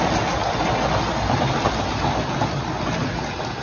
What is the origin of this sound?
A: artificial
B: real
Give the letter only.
B